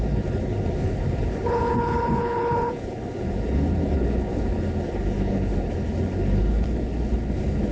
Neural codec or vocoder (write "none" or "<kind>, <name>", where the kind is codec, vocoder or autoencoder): codec, HILCodec